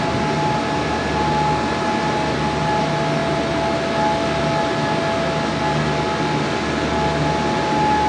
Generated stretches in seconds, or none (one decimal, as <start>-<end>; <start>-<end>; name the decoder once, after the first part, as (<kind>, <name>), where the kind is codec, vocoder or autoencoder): none